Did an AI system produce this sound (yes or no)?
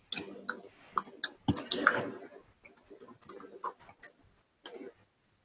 no